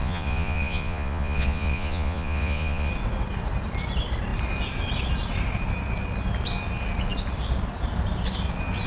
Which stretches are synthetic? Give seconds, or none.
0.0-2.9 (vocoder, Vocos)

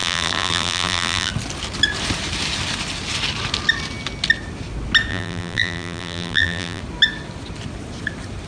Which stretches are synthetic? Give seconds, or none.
0.0-1.3 (vocoder, BigVGAN v2); 5.1-6.8